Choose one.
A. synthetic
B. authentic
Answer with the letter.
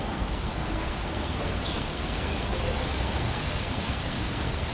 A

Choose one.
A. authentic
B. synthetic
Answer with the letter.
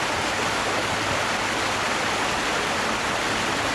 A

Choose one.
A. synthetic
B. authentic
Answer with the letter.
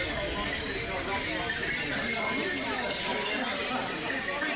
B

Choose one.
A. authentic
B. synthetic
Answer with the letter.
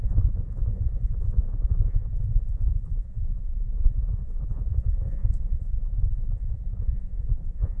B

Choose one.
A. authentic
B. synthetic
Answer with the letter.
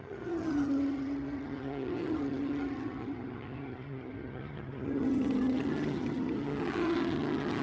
B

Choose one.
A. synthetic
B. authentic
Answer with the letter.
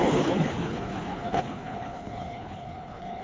A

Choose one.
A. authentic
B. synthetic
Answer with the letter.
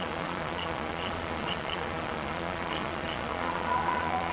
B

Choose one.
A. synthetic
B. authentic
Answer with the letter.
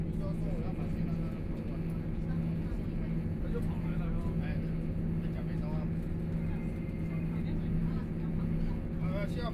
B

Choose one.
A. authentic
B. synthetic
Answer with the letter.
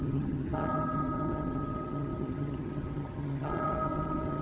B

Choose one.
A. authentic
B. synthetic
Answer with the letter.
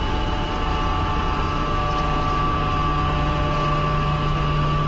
A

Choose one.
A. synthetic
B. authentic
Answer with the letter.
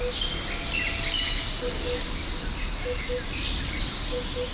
B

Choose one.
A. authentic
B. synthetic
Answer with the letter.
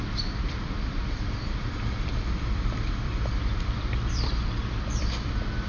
B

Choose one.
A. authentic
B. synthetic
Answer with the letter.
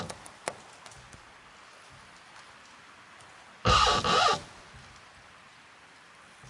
A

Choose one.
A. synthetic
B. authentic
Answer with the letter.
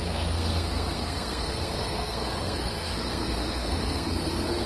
A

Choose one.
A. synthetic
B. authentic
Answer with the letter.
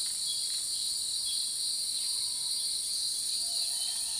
B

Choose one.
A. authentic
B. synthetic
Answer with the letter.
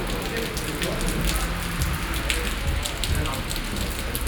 A